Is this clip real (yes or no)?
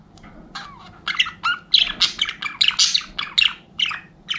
yes